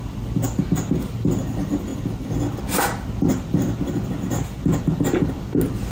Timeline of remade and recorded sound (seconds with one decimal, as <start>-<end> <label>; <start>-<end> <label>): 0.0-5.9 recorded